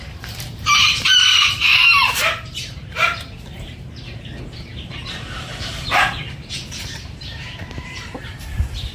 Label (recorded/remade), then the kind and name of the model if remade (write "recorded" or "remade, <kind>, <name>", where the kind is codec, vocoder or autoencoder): remade, vocoder, BigVGAN v2